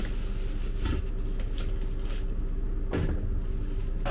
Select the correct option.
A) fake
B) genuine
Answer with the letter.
B